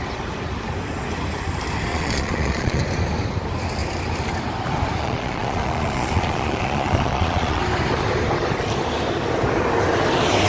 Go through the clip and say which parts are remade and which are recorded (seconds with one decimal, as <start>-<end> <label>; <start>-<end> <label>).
0.0-1.9 recorded; 1.9-2.8 remade; 2.8-5.0 recorded; 5.0-7.6 remade; 7.6-10.5 recorded